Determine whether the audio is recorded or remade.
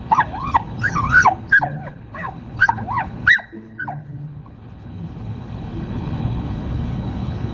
remade